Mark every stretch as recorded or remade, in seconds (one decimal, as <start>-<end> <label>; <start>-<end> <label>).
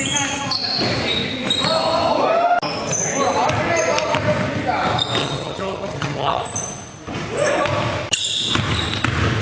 0.0-5.2 recorded; 5.2-6.4 remade; 6.4-9.4 recorded